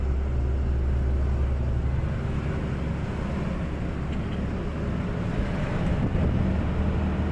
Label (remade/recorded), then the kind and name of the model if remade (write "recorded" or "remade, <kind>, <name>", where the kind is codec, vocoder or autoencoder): recorded